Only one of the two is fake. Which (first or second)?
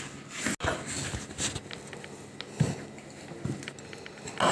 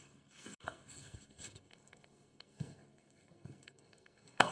second